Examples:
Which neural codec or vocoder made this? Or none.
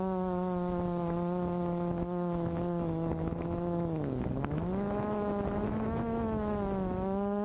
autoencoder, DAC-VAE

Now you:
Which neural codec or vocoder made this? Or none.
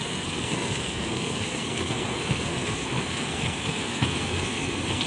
codec, SNAC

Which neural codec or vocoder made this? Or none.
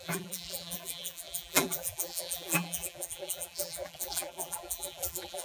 vocoder, BigVGAN v2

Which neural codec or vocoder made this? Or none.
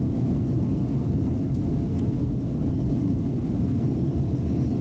codec, SNAC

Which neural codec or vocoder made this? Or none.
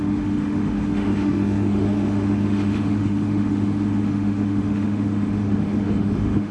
autoencoder, DAC-VAE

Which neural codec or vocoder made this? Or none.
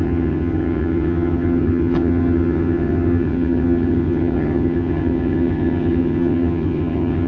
vocoder, HiFi-GAN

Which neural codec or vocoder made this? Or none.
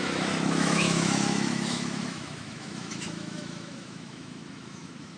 autoencoder, DAC-VAE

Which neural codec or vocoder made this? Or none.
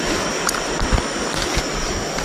none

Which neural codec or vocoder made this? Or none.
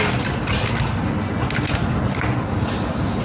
none